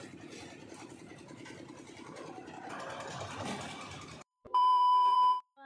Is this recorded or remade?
remade